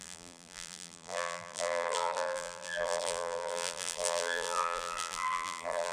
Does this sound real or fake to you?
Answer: fake